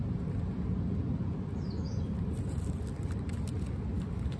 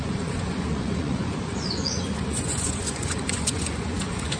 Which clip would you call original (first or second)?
first